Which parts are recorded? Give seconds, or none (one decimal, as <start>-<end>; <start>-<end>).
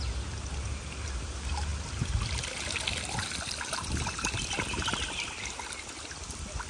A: 0.0-6.7